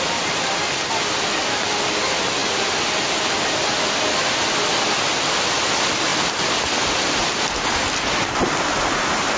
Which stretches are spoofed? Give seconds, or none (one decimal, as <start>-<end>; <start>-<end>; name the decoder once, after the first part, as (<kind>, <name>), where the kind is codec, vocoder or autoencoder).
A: 2.4-4.7 (vocoder, BigVGAN v2)